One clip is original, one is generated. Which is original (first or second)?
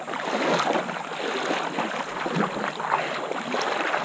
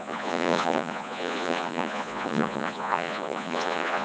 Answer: first